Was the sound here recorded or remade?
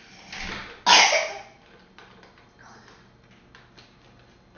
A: recorded